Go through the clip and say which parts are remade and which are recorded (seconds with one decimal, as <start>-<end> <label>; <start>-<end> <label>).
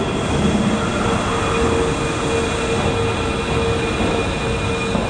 0.0-5.1 recorded